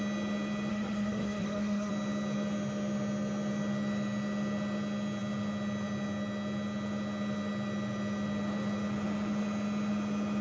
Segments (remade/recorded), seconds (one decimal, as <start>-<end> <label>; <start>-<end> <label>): 0.0-0.7 recorded; 0.7-1.9 remade; 1.9-10.4 recorded